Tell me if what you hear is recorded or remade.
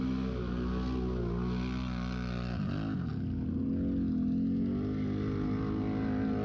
recorded